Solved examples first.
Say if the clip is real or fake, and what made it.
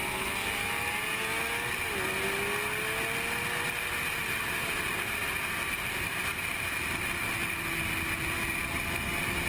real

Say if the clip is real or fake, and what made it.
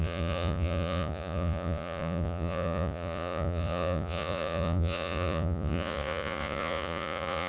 fake, vocoder, Vocos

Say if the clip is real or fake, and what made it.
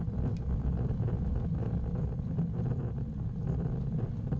real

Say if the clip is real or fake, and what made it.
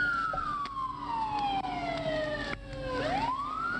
real